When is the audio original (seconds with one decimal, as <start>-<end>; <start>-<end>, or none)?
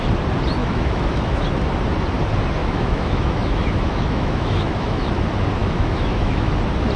0.0-0.6; 1.4-2.6; 5.1-5.6; 6.5-7.0